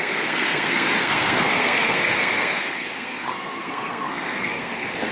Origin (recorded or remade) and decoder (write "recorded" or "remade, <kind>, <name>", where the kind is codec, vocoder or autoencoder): remade, codec, SNAC